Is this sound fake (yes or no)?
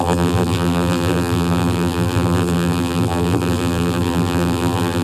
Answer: yes